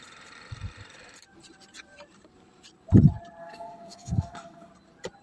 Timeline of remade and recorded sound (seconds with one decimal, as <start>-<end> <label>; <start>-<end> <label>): 0.0-3.4 recorded; 3.4-4.7 remade; 4.7-5.2 recorded